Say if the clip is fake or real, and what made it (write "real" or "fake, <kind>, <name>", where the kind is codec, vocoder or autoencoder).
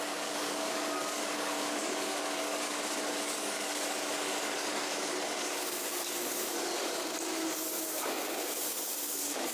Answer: fake, codec, DAC